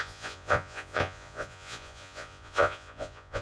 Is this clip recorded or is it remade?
remade